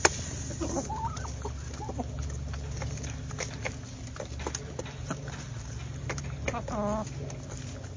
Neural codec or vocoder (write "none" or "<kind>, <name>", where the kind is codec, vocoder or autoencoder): none